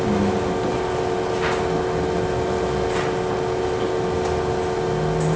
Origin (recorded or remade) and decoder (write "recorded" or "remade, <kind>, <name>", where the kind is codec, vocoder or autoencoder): recorded